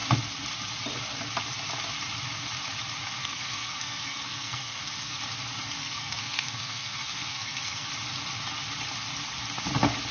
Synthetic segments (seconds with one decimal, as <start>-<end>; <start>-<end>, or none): 3.2-5.2; 5.8-7.9